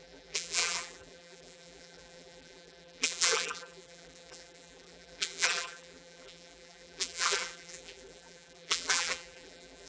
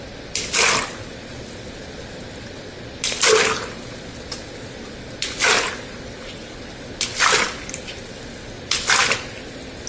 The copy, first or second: first